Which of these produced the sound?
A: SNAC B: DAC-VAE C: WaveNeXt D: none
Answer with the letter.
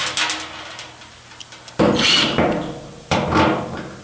D